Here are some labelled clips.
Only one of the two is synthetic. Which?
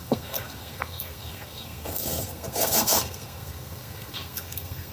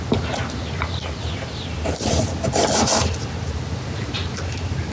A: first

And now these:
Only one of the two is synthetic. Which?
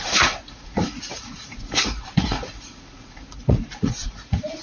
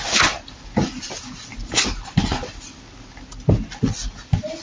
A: first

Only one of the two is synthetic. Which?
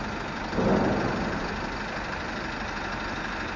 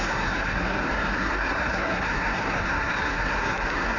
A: second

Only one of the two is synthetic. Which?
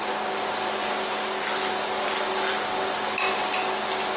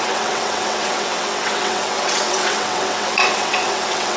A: second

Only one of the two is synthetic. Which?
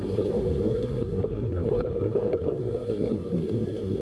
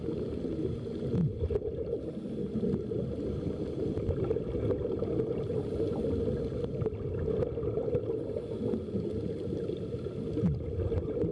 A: first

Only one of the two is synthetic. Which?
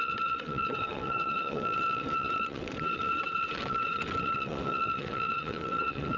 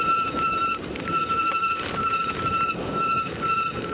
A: first